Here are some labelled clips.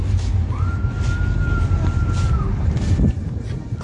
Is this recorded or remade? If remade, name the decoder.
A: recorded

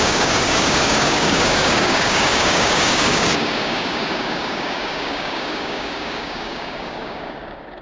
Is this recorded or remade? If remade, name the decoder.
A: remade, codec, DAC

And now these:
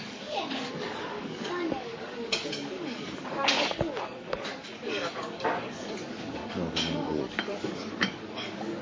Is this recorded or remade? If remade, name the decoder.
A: remade, codec, DAC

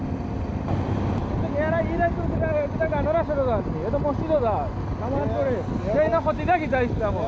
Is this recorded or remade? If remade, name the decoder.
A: recorded